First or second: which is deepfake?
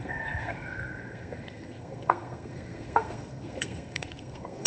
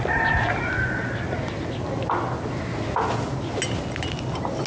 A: first